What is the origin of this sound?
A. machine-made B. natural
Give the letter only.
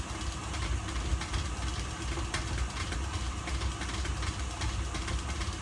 B